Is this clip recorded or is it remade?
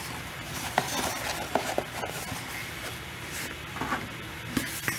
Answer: recorded